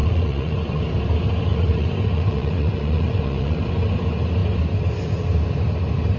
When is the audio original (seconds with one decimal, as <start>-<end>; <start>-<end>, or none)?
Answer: 0.8-1.5; 3.6-6.2

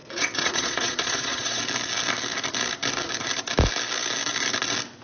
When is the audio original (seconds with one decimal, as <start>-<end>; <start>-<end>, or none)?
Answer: 1.6-5.0

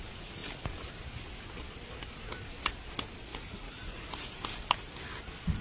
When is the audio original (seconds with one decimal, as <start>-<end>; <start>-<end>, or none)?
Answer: 0.0-3.3; 4.0-5.6

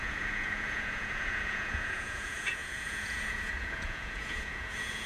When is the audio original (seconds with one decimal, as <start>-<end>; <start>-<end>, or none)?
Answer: none

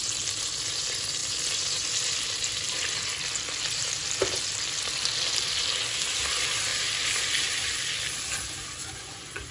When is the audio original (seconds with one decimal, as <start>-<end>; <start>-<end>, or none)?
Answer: 0.0-8.8

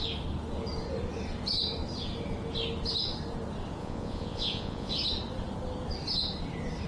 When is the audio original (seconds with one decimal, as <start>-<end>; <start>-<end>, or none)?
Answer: 0.0-3.8; 4.9-6.9

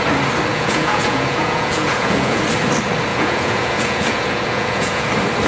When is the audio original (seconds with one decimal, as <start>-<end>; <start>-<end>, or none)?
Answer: 0.0-0.5; 2.4-3.1; 5.1-5.5

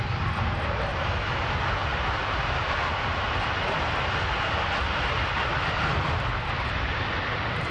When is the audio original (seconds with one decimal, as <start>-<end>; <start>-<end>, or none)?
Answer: 0.0-7.7